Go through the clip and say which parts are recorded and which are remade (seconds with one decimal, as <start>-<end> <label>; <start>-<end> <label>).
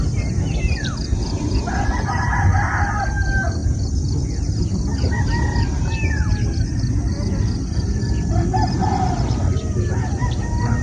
0.0-10.8 recorded